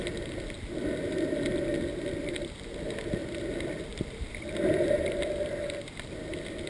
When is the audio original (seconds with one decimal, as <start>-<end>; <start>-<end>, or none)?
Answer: 0.0-3.2; 5.5-6.7